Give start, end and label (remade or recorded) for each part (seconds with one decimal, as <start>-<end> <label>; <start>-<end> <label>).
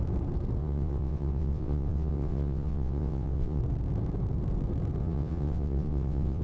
0.0-0.6 recorded; 0.6-3.6 remade; 3.6-5.0 recorded; 5.0-6.4 remade